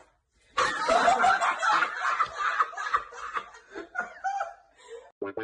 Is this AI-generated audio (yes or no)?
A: no